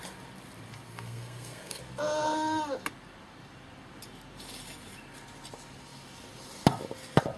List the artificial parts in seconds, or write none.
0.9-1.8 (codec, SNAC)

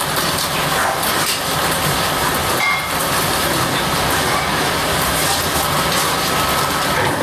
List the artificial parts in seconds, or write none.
none

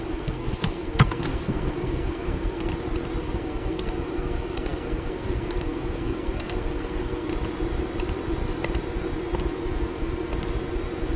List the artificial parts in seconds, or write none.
0.0-2.7 (codec, SNAC); 3.2-7.3

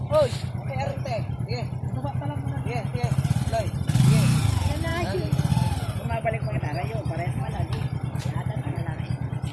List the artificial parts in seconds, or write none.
none

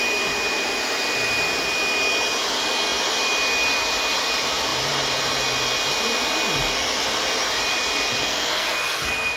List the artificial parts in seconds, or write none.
8.2-9.4 (codec, SNAC)

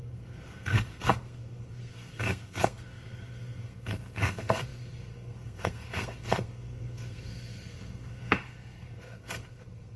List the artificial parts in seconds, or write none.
0.0-10.0 (codec, SNAC)